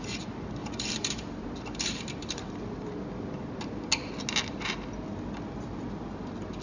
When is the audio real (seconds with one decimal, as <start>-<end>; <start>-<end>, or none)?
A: 0.0-0.6; 2.5-6.6